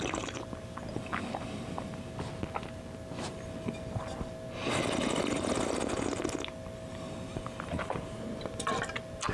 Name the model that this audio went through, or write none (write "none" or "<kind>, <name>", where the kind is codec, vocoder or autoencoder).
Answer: none